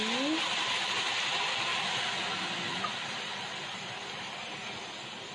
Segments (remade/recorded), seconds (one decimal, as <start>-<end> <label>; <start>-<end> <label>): 0.0-5.3 recorded